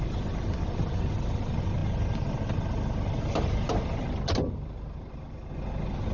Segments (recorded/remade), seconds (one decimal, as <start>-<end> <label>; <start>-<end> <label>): 0.0-6.1 recorded

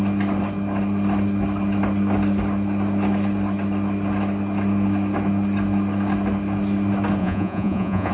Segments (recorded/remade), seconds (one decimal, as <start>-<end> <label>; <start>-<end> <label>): 0.0-7.2 recorded; 7.2-8.1 remade

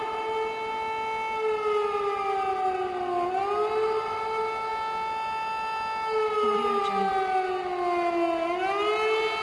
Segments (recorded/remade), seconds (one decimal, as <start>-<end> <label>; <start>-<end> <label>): 0.0-9.4 recorded

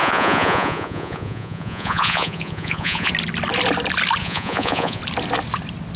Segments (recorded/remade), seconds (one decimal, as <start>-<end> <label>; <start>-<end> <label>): 0.0-3.1 remade; 3.1-4.2 recorded; 4.2-5.0 remade; 5.0-6.0 recorded

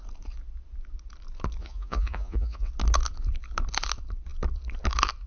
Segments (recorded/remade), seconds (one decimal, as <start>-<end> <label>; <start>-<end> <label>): 0.0-1.6 recorded; 1.6-2.7 remade; 2.7-5.3 recorded

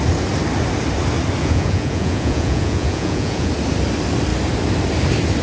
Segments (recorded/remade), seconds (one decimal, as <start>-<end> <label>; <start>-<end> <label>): 0.0-1.4 recorded; 1.4-3.5 remade; 3.5-5.4 recorded

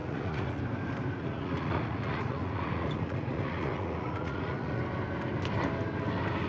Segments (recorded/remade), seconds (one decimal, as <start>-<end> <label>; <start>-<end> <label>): 0.0-0.6 remade; 0.6-1.2 recorded; 1.2-4.8 remade; 4.8-6.5 recorded

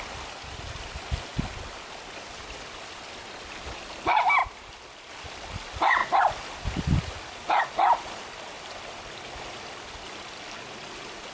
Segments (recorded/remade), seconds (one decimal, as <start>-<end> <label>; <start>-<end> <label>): 0.0-11.3 recorded